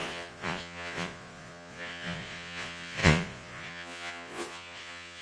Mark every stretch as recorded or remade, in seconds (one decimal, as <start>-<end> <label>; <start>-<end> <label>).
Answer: 0.0-5.2 remade